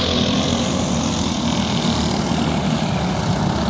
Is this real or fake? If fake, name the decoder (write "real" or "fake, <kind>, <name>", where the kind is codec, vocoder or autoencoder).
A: real